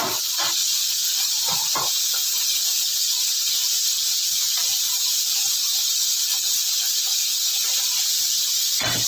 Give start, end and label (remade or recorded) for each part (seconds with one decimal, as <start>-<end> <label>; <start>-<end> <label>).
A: 0.0-3.6 recorded; 3.6-5.0 remade; 5.0-5.6 recorded; 5.6-8.6 remade; 8.6-9.1 recorded